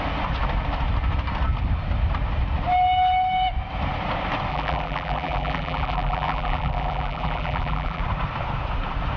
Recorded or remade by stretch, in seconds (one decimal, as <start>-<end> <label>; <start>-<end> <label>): 0.0-4.5 recorded; 4.5-8.0 remade; 8.0-9.2 recorded